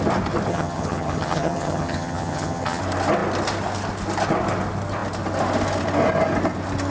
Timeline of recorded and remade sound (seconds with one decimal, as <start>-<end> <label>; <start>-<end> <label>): 0.0-0.5 recorded; 0.5-2.8 remade; 2.8-6.9 recorded